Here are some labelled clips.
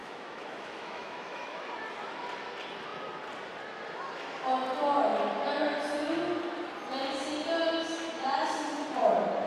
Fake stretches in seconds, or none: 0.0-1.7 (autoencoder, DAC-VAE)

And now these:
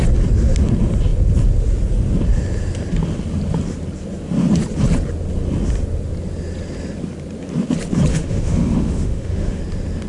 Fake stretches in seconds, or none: 8.1-9.6 (autoencoder, DAC-VAE)

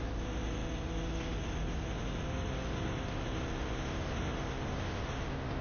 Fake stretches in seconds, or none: none

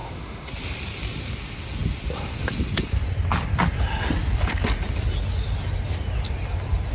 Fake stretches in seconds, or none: 0.0-0.5 (autoencoder, DAC-VAE)

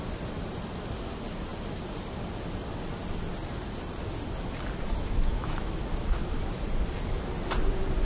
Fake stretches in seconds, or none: 5.0-5.7 (autoencoder, DAC-VAE)

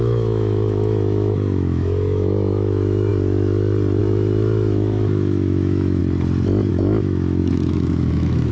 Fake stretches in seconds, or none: 0.0-3.1 (autoencoder, DAC-VAE); 4.0-6.0; 6.7-8.5

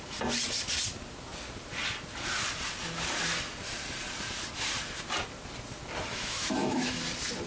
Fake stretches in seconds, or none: 6.1-7.0 (autoencoder, DAC-VAE)

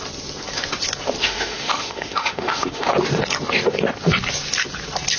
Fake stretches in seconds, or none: 1.2-2.9 (autoencoder, DAC-VAE)